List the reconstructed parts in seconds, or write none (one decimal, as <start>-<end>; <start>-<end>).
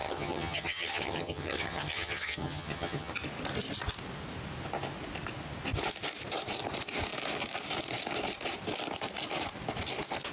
0.0-3.1